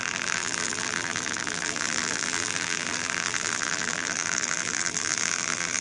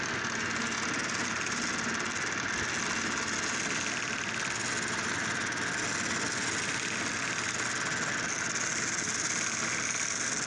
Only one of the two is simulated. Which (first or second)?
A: first